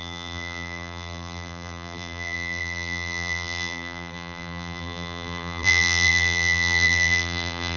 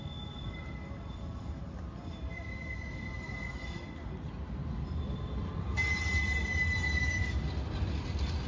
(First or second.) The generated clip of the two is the first